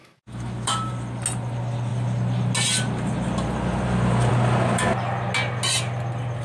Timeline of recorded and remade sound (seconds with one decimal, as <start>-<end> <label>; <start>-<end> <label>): 0.0-0.9 remade; 0.9-6.4 recorded